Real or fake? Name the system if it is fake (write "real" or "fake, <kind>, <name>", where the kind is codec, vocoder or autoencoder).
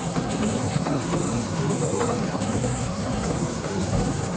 fake, codec, SNAC